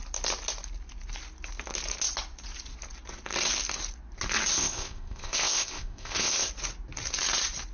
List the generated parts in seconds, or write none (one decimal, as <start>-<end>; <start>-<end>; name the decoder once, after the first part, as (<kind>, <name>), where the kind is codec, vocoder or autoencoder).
4.5-6.5 (codec, ZipCodec)